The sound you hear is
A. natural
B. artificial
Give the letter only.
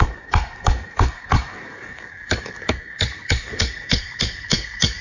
B